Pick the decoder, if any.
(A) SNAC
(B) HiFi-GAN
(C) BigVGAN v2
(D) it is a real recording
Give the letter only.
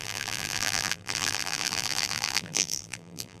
C